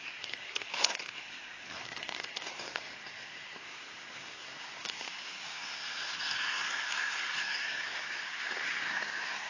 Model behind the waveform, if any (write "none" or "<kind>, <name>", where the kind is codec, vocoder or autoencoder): codec, SNAC